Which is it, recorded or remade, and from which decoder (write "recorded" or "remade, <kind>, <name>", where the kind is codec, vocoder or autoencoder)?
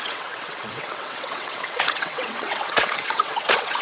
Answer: remade, vocoder, WaveNeXt